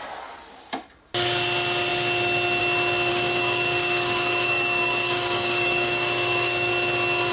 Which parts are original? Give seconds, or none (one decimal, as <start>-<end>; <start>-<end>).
0.0-3.1; 6.7-7.3